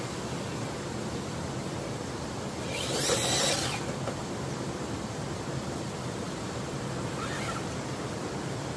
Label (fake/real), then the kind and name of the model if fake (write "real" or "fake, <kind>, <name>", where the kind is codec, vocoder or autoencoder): real